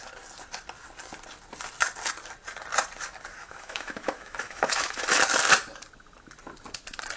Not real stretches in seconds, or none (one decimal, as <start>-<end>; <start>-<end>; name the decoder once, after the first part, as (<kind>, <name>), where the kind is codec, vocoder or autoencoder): 3.4-5.0 (autoencoder, DAC-VAE)